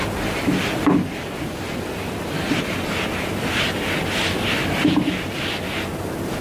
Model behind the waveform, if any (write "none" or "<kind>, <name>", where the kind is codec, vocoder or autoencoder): none